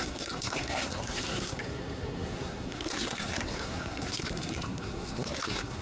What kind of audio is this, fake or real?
fake